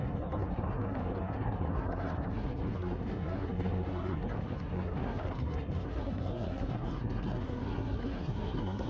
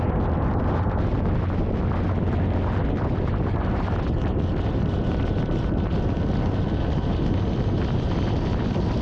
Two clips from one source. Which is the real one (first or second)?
second